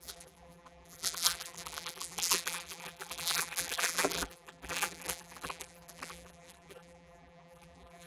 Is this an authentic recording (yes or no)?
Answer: no